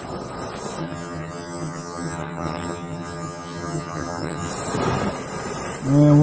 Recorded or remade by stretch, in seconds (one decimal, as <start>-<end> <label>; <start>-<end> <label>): 0.0-0.8 recorded; 0.8-4.5 remade; 4.5-6.2 recorded